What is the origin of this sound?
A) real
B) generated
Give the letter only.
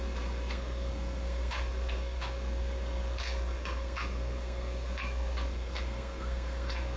B